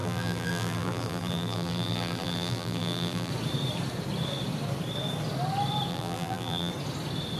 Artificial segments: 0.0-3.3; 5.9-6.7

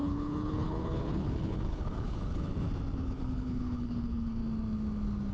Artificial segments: 0.0-2.5; 3.0-4.4